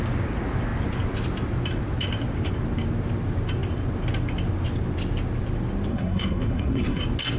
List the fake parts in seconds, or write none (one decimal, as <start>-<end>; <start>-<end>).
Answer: 5.9-7.0